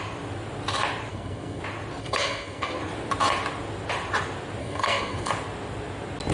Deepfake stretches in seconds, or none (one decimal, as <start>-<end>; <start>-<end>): 1.1-1.6; 2.0-2.8; 4.6-5.3